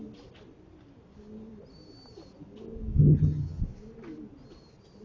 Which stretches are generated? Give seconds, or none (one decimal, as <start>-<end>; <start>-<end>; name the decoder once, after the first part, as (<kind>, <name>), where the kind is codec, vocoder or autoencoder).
3.0-3.6 (vocoder, HiFi-GAN)